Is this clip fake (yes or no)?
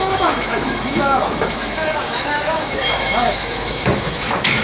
yes